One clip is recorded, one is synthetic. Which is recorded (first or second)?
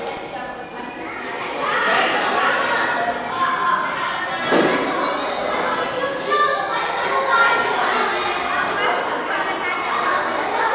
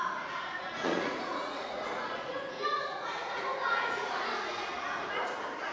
first